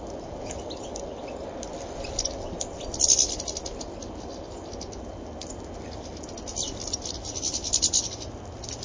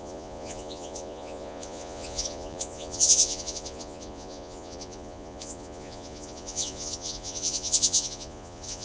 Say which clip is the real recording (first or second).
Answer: first